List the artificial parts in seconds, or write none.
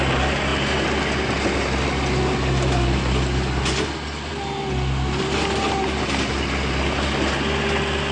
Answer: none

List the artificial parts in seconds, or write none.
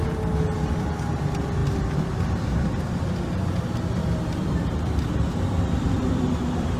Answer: 1.6-2.2 (vocoder, BigVGAN v2); 4.0-6.8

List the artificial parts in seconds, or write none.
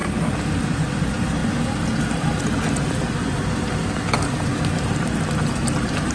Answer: 0.6-1.4 (vocoder, BigVGAN v2); 4.3-6.1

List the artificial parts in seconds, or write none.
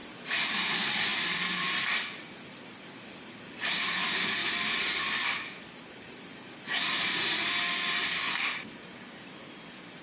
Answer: 0.0-0.5 (vocoder, BigVGAN v2); 1.1-3.9; 4.4-5.9